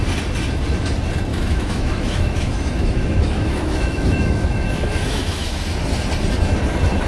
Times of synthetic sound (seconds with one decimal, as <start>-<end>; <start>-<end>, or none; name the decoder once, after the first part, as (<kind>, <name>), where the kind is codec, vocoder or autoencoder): 1.3-5.6 (autoencoder, DAC-VAE)